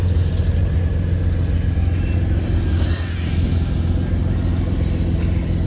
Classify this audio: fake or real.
real